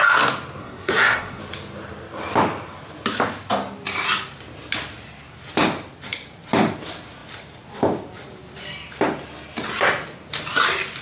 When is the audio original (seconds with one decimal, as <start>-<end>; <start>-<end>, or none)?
0.0-0.6; 1.4-11.0